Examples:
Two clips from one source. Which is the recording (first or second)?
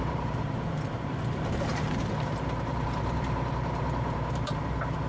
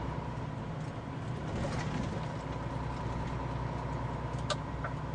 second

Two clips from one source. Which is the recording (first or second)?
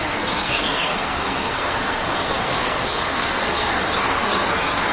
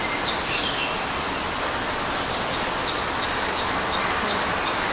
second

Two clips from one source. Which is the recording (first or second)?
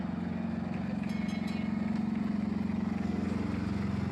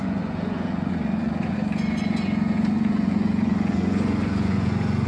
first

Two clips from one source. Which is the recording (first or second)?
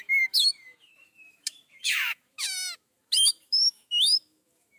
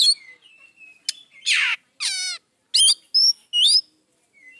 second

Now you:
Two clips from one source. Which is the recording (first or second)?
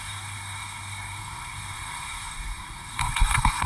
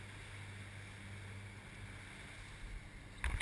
second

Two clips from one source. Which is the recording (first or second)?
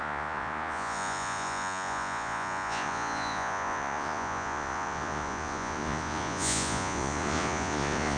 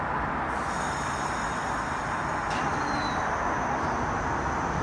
second